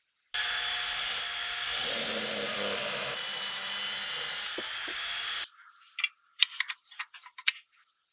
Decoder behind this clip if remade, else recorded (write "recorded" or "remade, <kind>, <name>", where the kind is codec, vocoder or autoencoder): recorded